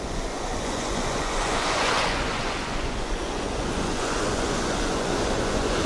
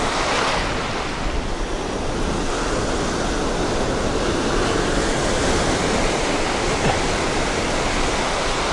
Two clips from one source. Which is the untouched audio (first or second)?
second